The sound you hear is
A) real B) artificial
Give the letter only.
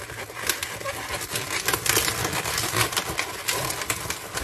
A